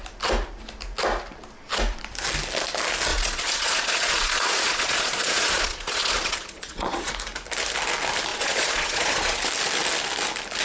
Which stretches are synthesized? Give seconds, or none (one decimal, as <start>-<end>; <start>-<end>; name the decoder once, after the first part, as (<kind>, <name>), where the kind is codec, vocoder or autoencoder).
3.1-7.1 (vocoder, Vocos); 8.3-9.4